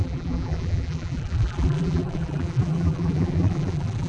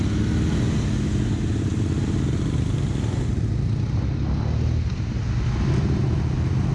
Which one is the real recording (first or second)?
second